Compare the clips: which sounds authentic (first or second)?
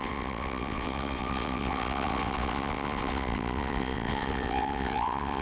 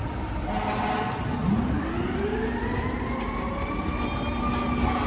second